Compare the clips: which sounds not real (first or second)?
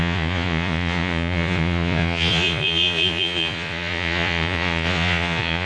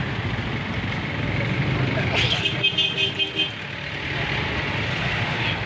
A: first